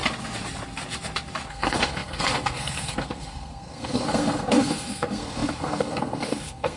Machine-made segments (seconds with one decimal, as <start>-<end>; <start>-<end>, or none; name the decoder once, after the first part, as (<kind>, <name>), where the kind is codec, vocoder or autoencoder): 1.5-6.8 (codec, SNAC)